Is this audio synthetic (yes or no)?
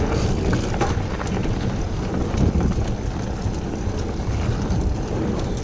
no